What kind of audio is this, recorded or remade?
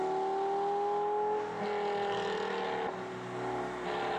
recorded